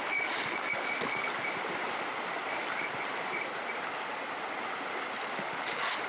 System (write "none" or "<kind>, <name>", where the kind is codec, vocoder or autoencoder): none